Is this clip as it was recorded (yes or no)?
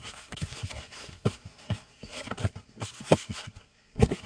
no